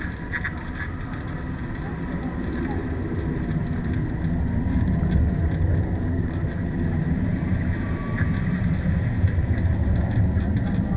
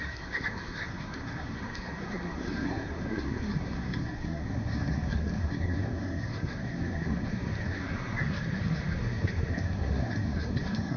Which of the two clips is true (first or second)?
first